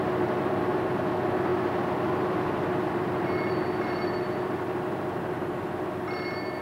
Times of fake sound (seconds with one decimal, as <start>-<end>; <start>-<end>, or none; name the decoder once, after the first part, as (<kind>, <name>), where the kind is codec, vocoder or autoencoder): none